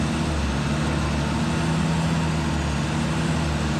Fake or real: real